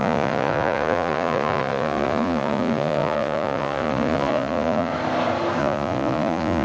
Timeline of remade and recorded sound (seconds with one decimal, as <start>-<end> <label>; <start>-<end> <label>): 0.0-4.9 remade; 4.9-5.6 recorded; 5.6-6.6 remade